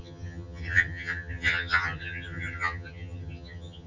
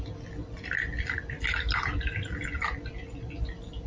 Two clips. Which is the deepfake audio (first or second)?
first